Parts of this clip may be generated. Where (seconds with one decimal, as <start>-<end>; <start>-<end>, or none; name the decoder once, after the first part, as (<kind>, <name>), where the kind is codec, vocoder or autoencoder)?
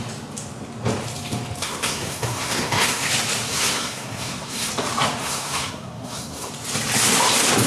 1.6-3.1 (codec, SNAC); 3.5-4.7; 5.2-6.5